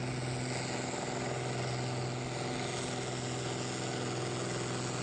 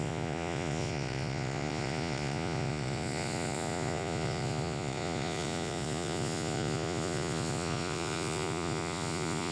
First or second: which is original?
first